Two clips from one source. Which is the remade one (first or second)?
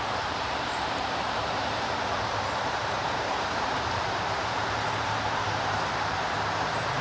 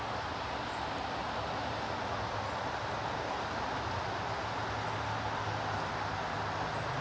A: first